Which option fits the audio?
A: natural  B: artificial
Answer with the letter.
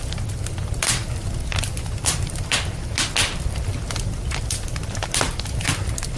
A